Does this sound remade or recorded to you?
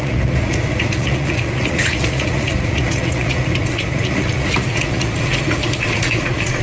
remade